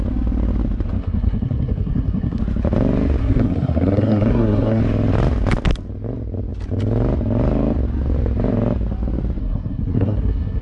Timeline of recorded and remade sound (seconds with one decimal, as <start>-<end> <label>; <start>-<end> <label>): 0.0-1.0 recorded; 1.0-2.4 remade; 2.4-3.2 recorded; 3.2-4.8 remade; 4.8-9.4 recorded; 9.4-10.6 remade